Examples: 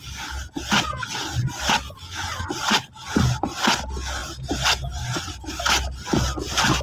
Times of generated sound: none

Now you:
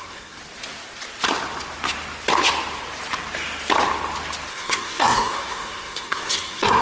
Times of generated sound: 0.0-0.4 (codec, SNAC); 4.5-6.8

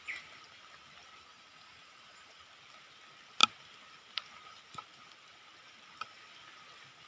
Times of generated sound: 1.3-2.4 (vocoder, Vocos)